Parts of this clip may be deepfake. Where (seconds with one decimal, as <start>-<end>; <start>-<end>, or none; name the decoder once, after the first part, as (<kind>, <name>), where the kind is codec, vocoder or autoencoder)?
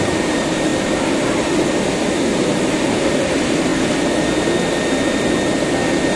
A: 0.0-0.7 (vocoder, BigVGAN v2); 2.6-3.7